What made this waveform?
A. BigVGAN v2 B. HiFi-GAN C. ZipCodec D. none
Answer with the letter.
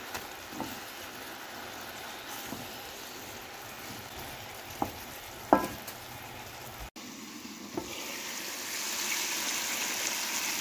D